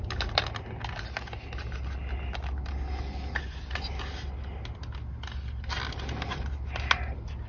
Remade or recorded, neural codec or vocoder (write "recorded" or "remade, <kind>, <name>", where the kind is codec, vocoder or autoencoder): recorded